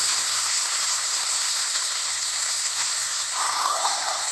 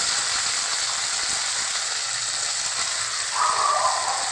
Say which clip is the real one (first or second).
second